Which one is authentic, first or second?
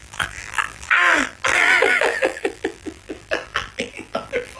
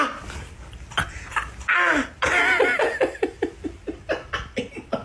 second